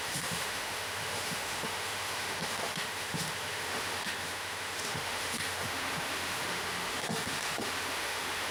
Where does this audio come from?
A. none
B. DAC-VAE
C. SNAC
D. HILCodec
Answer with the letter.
B